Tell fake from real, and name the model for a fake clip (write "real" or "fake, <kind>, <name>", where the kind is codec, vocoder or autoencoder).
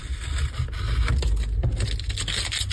real